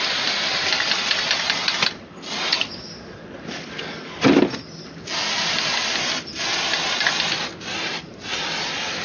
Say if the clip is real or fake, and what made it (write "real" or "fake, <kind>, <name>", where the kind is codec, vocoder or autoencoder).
real